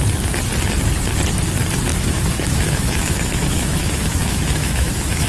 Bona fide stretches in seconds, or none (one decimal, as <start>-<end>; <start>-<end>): 0.0-1.9

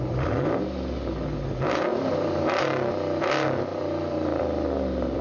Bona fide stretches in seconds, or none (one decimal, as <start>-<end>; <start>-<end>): 0.0-1.9; 2.4-3.7; 4.4-5.2